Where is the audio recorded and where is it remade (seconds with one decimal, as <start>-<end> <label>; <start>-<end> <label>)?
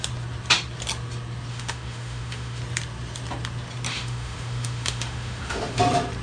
0.0-1.5 recorded; 1.5-2.6 remade; 2.6-3.9 recorded; 3.9-5.8 remade; 5.8-6.2 recorded